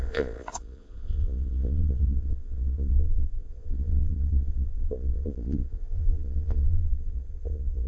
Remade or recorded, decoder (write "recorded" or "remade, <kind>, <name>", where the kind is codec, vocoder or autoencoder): remade, vocoder, Vocos